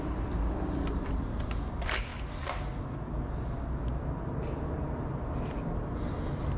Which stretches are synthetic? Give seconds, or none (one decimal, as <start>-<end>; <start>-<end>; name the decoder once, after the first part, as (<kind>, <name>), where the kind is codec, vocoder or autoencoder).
none

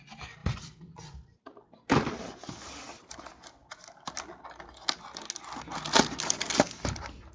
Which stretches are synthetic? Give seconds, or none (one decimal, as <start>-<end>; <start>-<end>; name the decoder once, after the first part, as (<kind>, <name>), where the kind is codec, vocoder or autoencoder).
0.4-2.1 (vocoder, BigVGAN v2); 3.6-4.4

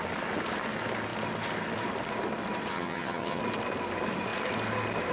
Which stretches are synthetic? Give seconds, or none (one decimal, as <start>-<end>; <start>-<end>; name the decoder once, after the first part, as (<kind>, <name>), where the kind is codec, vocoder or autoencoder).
2.7-3.4 (vocoder, HiFi-GAN)

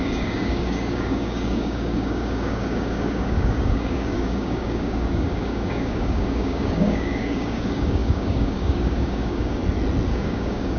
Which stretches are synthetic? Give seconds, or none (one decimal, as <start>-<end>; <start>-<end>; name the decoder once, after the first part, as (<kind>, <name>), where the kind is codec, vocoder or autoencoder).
0.0-9.6 (codec, DAC); 10.1-10.8

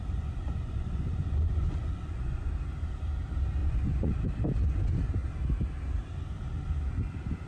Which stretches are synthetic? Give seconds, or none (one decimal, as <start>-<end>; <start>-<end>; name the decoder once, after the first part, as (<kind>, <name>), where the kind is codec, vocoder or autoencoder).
0.0-2.5 (vocoder, Vocos); 3.6-4.2

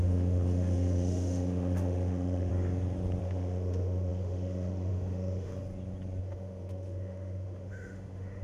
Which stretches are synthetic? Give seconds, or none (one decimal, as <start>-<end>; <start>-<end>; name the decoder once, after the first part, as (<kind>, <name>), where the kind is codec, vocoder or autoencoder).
0.0-2.5 (autoencoder, DAC-VAE); 3.2-5.5; 6.2-8.4

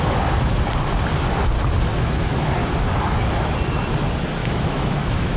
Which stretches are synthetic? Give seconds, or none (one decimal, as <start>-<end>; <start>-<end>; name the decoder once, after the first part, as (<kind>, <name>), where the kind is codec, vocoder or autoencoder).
1.9-2.5 (autoencoder, DAC-VAE); 4.4-5.4